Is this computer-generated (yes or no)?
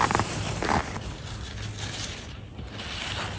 no